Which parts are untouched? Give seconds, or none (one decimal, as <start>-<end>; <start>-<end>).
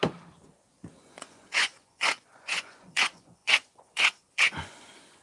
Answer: 0.0-1.0